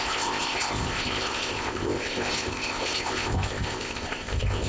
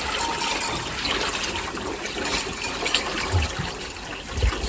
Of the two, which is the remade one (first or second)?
first